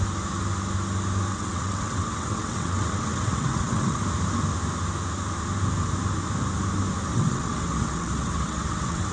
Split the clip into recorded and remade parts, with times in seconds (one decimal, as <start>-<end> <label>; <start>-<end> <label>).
0.0-1.3 recorded; 1.3-4.0 remade; 4.0-7.1 recorded; 7.1-9.1 remade